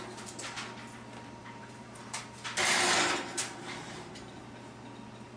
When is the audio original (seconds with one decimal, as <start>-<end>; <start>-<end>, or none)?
0.0-1.4; 2.2-3.3; 4.4-5.4

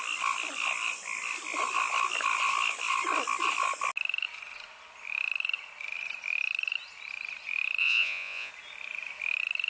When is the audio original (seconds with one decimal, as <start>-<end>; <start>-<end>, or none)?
0.0-7.8; 8.5-9.7

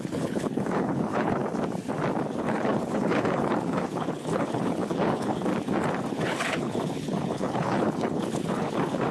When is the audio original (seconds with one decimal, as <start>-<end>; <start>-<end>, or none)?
1.4-2.4; 5.5-6.1

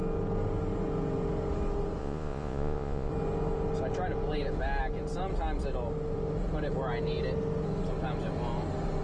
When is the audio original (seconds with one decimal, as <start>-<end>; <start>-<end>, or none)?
0.0-2.0; 3.1-9.0

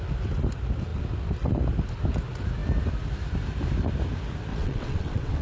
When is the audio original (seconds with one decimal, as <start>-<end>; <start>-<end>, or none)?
0.0-4.5

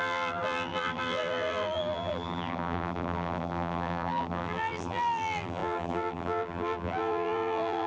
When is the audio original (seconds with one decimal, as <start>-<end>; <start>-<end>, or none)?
none